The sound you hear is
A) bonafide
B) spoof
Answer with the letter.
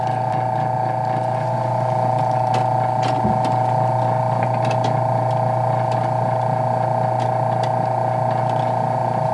A